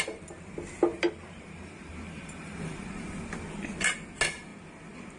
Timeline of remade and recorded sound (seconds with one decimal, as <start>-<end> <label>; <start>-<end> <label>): 0.0-0.9 recorded; 0.9-3.1 remade; 3.1-5.2 recorded